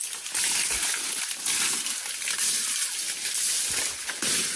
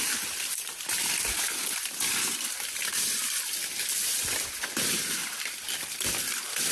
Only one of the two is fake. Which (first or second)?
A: second